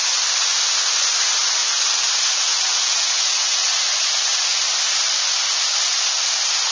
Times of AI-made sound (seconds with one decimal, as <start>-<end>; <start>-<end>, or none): 1.6-2.1; 2.5-4.0